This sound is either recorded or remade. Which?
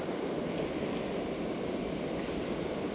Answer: recorded